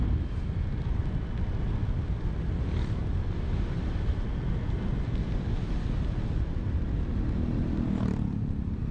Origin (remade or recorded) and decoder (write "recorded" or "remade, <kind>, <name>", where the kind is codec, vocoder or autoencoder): recorded